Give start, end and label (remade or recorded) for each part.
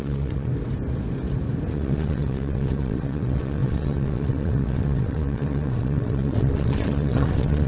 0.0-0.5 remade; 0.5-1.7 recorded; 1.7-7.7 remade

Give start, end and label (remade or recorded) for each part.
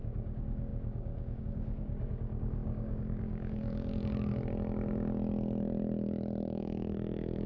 0.0-4.3 remade; 4.3-6.4 recorded; 6.4-7.5 remade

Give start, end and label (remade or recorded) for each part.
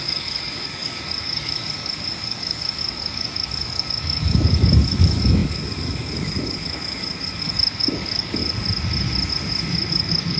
0.0-8.4 remade; 8.4-9.9 recorded; 9.9-10.4 remade